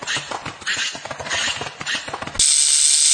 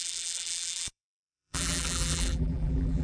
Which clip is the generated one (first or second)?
second